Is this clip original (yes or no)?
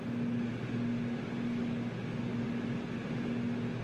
yes